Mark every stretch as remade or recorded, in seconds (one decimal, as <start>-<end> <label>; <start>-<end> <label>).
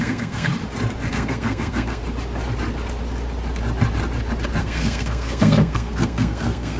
0.0-0.5 remade; 0.5-1.1 recorded; 1.1-2.0 remade; 2.0-4.6 recorded; 4.6-6.8 remade